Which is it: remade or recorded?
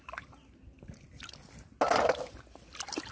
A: recorded